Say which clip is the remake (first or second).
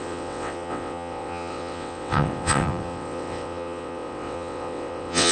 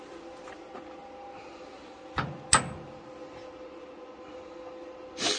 first